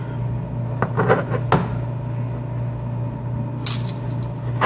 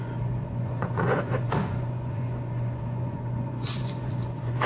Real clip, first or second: first